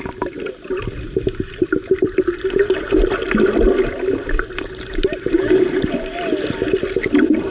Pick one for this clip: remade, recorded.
recorded